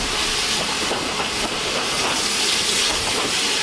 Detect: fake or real fake